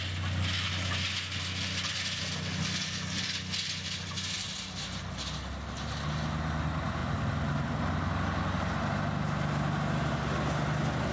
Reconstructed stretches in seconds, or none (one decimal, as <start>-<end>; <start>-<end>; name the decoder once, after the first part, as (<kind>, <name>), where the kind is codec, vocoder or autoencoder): none